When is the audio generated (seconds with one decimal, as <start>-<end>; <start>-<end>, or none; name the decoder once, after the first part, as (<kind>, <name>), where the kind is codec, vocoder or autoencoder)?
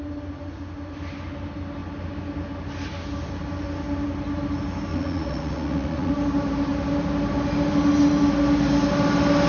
4.9-6.1 (vocoder, Vocos)